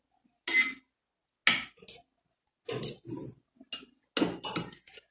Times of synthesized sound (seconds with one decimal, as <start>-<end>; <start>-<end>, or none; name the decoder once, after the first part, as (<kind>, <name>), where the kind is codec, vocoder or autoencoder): none